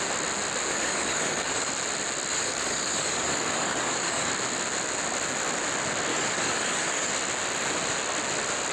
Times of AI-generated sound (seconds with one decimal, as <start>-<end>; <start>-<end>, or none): 0.7-1.7; 2.3-4.3; 6.1-7.1

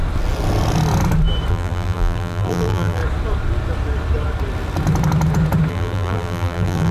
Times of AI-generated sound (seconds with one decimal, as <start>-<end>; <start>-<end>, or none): 1.5-3.0; 5.7-6.9

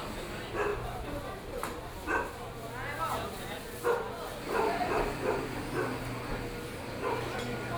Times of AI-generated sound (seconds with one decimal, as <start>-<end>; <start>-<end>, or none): none

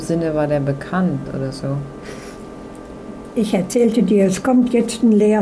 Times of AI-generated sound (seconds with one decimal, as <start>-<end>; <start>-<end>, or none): none

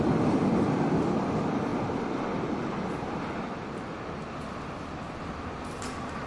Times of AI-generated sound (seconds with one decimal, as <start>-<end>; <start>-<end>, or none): none